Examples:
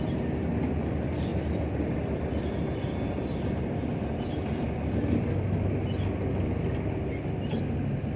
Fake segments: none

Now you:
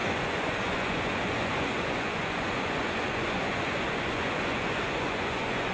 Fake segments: 0.0-5.7

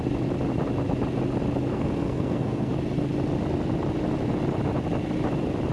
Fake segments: 1.7-2.7